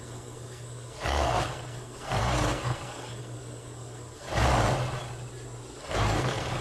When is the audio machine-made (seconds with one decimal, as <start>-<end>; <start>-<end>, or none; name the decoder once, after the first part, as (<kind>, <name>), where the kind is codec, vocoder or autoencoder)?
0.0-4.3 (codec, SNAC); 5.8-6.6